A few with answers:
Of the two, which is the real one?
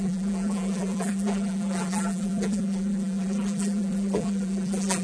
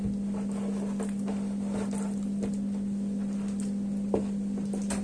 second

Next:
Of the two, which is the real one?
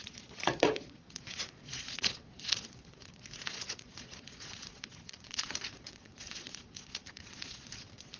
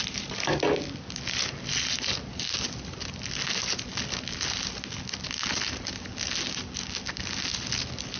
second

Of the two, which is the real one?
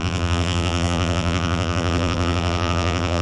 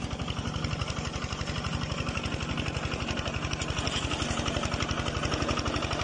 second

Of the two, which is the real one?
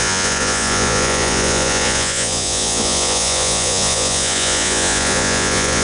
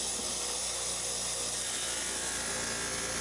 second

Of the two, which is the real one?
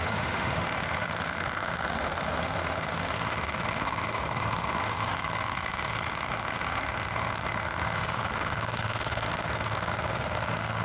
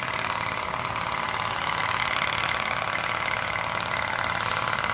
second